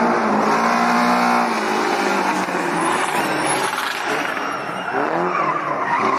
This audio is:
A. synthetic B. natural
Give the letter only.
B